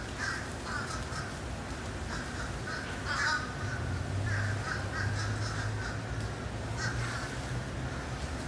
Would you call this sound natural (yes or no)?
yes